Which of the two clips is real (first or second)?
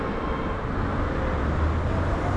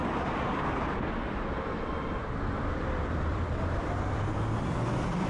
first